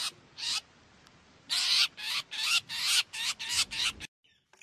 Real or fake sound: real